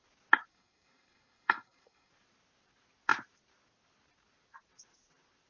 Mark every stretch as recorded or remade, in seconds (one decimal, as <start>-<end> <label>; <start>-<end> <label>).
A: 0.0-0.5 recorded; 0.5-2.1 remade; 2.1-5.5 recorded